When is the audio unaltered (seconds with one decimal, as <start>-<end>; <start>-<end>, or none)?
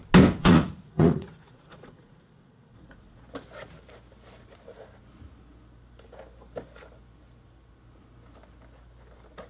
0.0-0.4; 3.2-9.5